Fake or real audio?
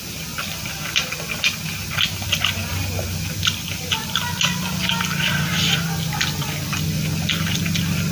real